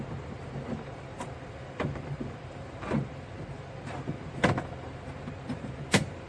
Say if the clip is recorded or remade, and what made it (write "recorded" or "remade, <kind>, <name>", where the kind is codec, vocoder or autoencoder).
remade, vocoder, BigVGAN v2